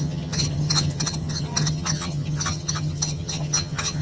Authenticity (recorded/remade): remade